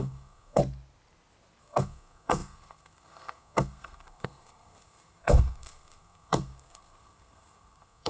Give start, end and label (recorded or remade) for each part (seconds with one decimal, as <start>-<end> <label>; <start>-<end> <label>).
0.0-0.6 remade; 0.6-1.6 recorded; 1.6-8.1 remade